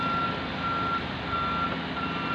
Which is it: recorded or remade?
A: recorded